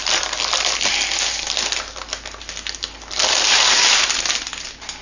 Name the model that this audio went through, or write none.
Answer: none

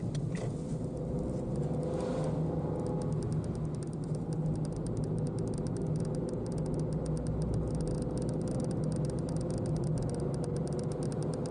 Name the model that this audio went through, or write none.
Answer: none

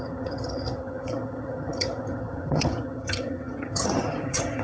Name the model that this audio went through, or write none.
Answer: vocoder, HiFi-GAN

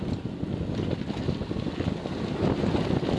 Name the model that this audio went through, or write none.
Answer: none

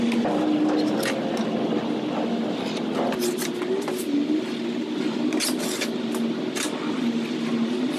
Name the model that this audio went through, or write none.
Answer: none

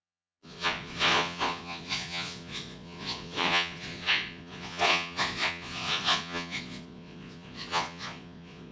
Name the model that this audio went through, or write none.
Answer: vocoder, Vocos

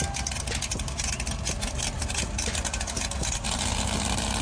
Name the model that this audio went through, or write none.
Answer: none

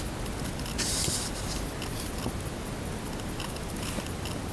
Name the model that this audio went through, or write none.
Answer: none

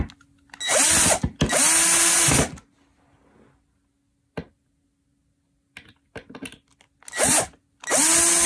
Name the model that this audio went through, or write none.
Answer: none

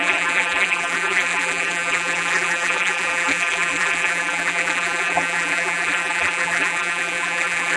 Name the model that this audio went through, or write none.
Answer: vocoder, BigVGAN v2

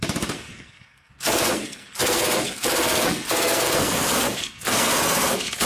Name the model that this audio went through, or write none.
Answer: codec, SNAC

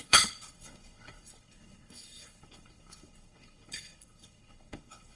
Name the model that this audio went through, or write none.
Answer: codec, HILCodec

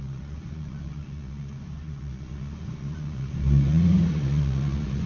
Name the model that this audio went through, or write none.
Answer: vocoder, Vocos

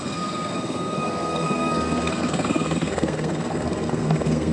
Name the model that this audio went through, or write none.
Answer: codec, SNAC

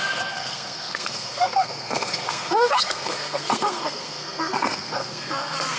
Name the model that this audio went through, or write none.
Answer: codec, SNAC